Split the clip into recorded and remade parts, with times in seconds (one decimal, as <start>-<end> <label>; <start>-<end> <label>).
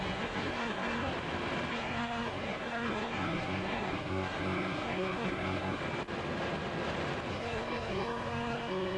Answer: 0.0-1.1 remade; 1.1-1.7 recorded; 1.7-5.8 remade; 5.8-7.3 recorded; 7.3-9.0 remade